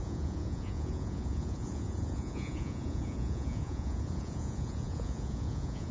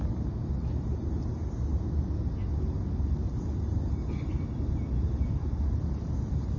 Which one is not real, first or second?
first